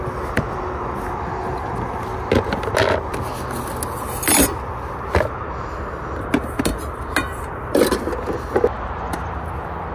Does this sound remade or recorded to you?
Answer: recorded